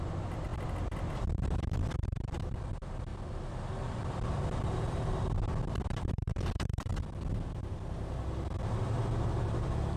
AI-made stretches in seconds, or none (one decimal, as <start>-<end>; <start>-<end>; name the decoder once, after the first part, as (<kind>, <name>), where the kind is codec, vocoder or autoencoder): 0.0-0.5 (vocoder, BigVGAN v2); 1.1-6.9; 8.8-10.0